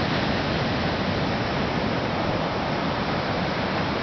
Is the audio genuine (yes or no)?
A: yes